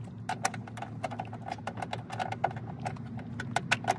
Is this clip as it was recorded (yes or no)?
yes